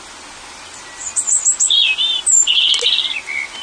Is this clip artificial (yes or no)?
no